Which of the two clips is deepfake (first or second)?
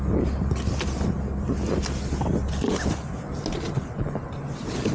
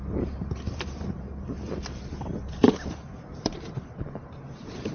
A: second